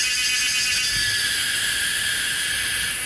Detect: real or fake real